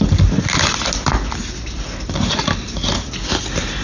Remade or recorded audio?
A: recorded